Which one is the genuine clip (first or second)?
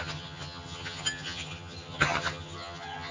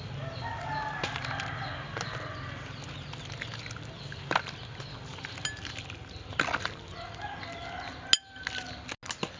second